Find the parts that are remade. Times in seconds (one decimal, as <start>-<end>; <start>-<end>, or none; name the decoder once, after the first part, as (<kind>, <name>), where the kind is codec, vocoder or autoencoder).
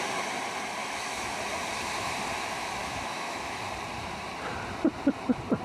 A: 0.8-1.3 (autoencoder, DAC-VAE); 2.8-3.6